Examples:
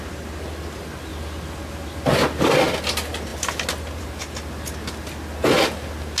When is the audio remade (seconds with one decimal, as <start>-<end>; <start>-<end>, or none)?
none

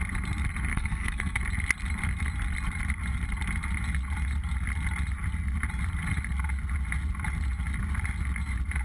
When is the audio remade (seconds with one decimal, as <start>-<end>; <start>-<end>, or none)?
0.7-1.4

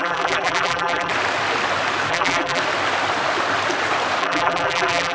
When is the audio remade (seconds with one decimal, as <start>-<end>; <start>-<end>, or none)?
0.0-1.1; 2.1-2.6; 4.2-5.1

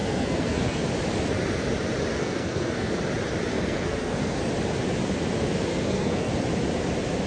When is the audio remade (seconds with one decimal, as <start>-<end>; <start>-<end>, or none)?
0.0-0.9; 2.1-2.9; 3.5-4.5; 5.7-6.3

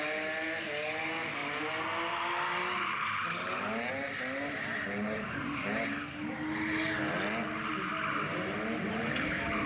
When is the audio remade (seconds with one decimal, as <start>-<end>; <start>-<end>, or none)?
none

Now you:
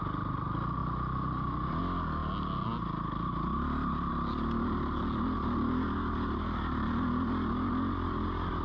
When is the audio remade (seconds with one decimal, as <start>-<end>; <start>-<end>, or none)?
none

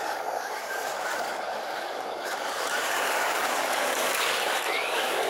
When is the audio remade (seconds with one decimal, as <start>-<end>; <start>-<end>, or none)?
0.0-5.3

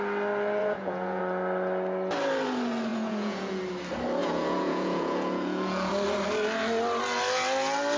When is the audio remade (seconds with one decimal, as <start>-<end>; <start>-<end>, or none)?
0.6-1.2; 2.9-3.6; 4.2-5.9